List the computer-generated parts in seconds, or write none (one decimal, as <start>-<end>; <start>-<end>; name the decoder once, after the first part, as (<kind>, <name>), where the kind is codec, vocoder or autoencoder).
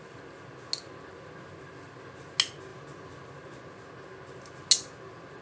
2.7-3.2 (vocoder, BigVGAN v2)